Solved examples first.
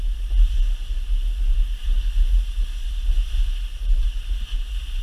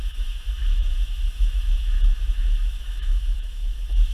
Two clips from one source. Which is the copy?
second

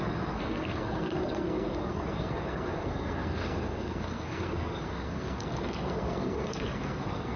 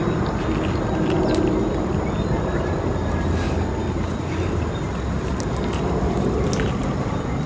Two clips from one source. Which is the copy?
first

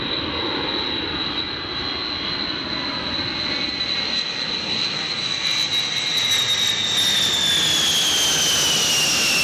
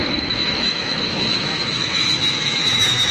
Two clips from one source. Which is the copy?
second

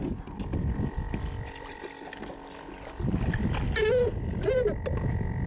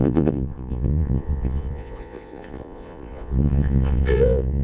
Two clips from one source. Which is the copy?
second